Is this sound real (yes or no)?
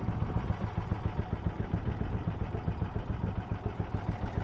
yes